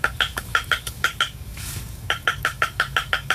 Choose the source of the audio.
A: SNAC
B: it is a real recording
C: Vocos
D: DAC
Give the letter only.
D